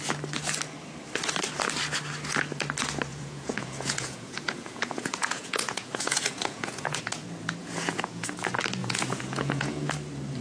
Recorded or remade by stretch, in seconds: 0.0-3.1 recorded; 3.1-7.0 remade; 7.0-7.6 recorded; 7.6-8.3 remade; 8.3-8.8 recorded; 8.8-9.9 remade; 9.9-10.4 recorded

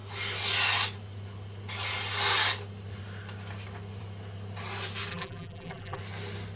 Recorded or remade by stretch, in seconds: 0.0-5.1 recorded; 5.1-6.0 remade; 6.0-6.6 recorded